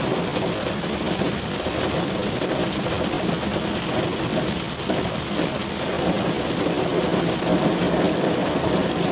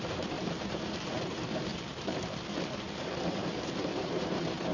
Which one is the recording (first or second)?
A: first